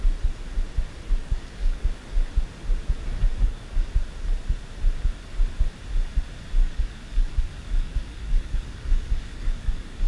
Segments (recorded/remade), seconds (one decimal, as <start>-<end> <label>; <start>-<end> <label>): 0.0-1.2 recorded; 1.2-2.0 remade; 2.0-3.3 recorded; 3.3-3.9 remade; 3.9-6.6 recorded; 6.6-10.1 remade